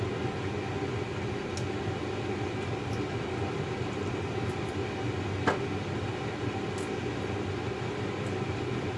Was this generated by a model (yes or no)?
no